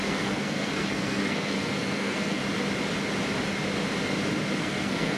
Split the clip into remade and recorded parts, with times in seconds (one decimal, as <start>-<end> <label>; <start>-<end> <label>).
0.0-2.4 remade; 2.4-4.6 recorded; 4.6-5.2 remade